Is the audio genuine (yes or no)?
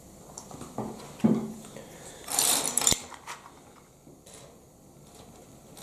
no